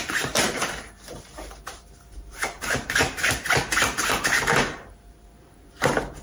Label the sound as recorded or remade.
remade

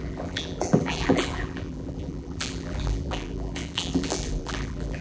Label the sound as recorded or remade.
remade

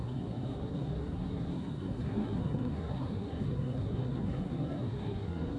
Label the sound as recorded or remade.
remade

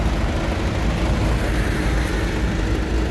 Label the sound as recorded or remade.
recorded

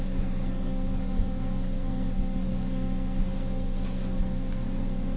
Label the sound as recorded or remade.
remade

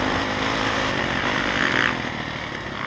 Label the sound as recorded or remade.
recorded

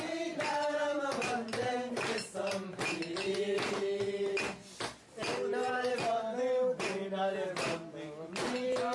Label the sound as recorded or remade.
recorded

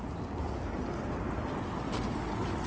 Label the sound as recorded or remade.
recorded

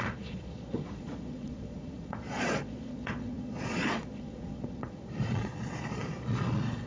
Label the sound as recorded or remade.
remade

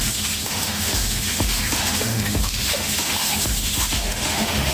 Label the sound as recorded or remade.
remade